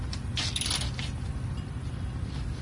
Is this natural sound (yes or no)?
yes